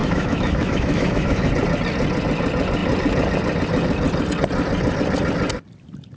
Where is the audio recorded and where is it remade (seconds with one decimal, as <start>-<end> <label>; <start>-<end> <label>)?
0.0-1.5 remade; 1.5-6.2 recorded